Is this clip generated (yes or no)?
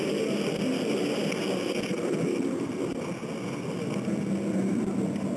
no